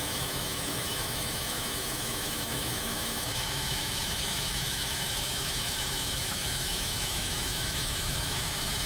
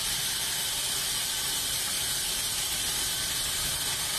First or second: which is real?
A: second